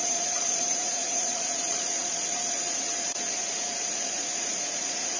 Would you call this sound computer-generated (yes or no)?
yes